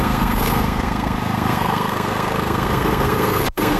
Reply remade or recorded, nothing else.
remade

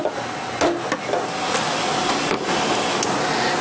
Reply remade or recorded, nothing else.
recorded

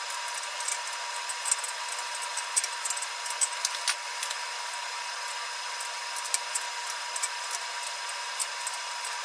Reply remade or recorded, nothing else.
recorded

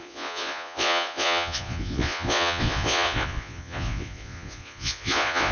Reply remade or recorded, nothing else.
remade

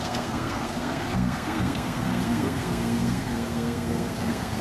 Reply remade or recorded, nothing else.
remade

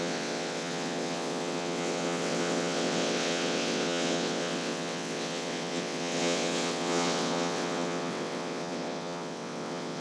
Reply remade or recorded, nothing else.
remade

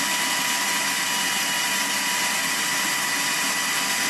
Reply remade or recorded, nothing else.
recorded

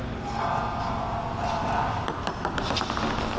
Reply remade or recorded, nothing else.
recorded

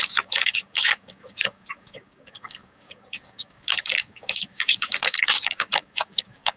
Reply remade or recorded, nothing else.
remade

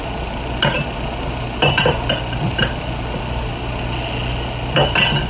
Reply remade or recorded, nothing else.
recorded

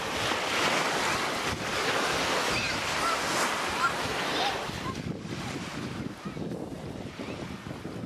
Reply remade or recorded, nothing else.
recorded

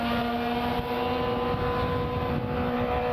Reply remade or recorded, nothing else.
recorded